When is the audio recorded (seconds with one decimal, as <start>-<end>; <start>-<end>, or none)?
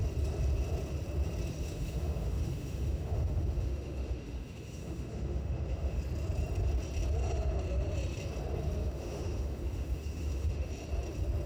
0.0-1.6; 6.0-8.8; 10.7-11.5